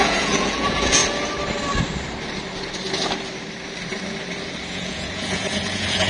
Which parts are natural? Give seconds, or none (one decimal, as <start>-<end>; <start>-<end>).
1.0-4.7